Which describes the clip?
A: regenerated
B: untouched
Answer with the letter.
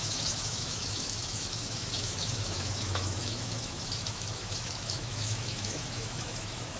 A